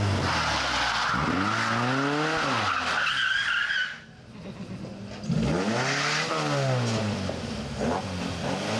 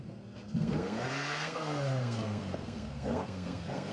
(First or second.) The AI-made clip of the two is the second